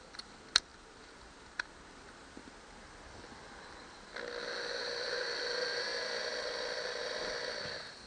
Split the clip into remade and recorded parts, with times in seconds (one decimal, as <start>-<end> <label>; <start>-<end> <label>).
0.0-8.1 recorded